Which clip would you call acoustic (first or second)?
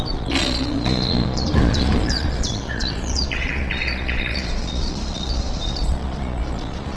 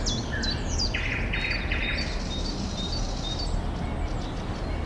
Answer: second